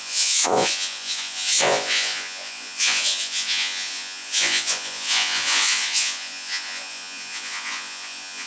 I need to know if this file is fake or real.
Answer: fake